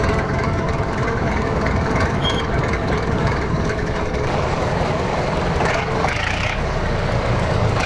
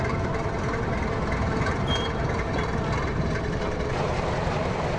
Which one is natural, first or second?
second